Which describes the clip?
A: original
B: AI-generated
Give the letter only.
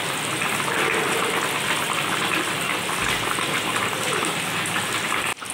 A